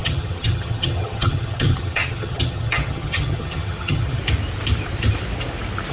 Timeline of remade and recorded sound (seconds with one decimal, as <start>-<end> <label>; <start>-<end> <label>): 0.0-4.2 remade; 4.2-5.9 recorded